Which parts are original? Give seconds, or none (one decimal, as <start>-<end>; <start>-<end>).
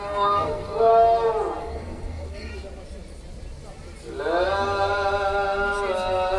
0.9-1.6; 2.5-6.4